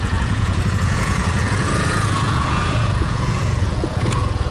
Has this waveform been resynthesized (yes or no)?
yes